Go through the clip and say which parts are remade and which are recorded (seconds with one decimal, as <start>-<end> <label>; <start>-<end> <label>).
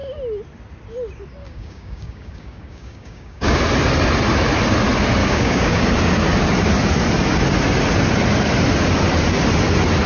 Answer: 0.0-1.4 recorded; 1.4-3.6 remade; 3.6-5.2 recorded; 5.2-5.8 remade; 5.8-10.1 recorded